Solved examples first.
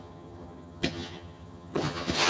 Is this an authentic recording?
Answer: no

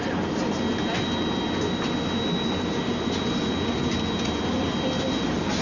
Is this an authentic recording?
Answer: yes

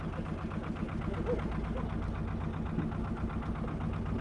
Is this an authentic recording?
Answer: yes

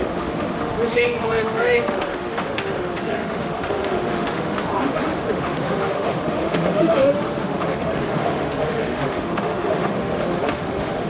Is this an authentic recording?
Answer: no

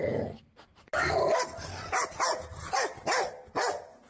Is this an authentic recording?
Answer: yes